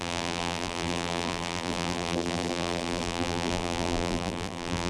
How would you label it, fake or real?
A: fake